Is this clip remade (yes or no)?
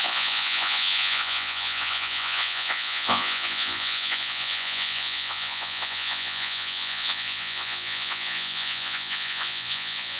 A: yes